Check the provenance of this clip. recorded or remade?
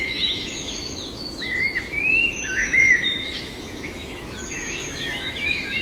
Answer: remade